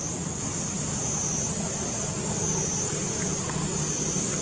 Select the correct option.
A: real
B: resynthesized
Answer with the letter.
A